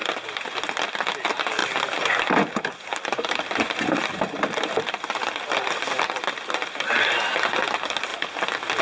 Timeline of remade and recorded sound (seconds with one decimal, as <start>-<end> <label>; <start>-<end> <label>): 0.0-0.6 remade; 0.6-1.6 recorded; 1.6-5.6 remade; 5.6-8.8 recorded